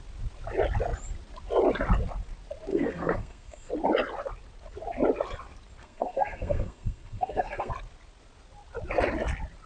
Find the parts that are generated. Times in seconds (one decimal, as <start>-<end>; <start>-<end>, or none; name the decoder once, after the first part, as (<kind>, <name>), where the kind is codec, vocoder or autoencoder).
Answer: 2.7-3.7 (codec, SNAC); 5.8-7.7